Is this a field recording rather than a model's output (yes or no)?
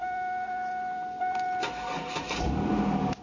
no